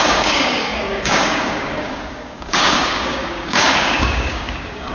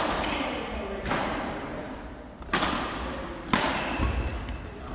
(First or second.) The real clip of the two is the second